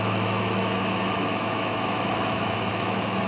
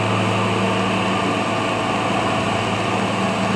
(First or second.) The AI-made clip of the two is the first